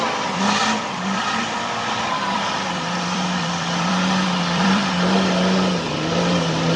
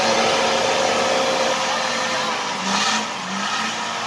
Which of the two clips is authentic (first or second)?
second